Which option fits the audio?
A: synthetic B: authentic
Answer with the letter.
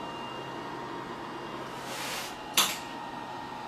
B